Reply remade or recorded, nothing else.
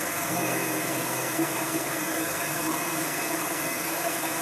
remade